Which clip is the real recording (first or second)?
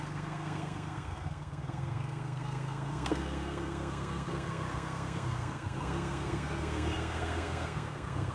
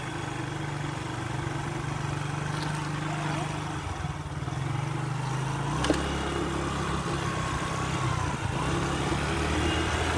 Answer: second